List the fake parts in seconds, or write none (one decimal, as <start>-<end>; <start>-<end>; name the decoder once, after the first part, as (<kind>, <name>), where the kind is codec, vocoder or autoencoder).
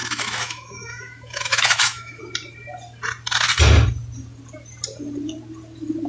0.0-2.2 (autoencoder, DAC-VAE)